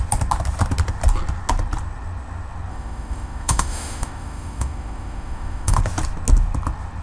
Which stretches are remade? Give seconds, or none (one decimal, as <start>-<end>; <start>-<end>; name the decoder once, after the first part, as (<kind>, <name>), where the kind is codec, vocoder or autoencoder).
2.7-5.8 (autoencoder, DAC-VAE)